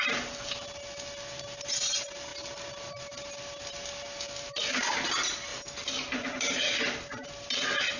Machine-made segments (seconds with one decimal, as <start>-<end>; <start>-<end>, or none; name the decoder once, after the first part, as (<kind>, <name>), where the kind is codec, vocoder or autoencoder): none

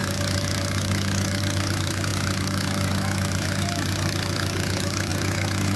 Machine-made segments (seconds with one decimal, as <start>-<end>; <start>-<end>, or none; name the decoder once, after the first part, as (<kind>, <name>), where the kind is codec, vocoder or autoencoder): 0.0-5.8 (codec, DAC)

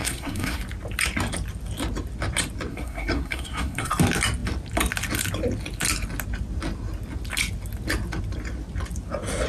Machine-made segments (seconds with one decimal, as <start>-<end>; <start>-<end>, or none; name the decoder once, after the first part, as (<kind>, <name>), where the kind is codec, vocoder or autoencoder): 0.0-0.6 (codec, SNAC); 2.7-3.9

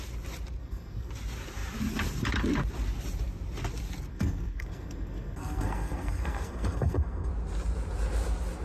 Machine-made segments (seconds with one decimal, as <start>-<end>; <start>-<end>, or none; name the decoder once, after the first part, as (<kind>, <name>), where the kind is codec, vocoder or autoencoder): 0.6-1.1 (codec, SNAC); 4.1-7.3

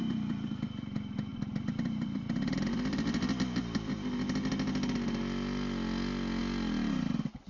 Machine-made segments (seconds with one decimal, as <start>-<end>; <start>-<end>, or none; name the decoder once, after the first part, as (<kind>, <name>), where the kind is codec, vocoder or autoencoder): 1.3-4.5 (vocoder, BigVGAN v2)

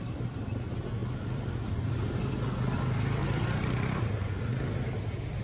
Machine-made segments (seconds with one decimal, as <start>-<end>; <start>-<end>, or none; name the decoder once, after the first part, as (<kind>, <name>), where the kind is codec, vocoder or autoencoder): 1.0-1.9 (vocoder, BigVGAN v2); 3.2-4.3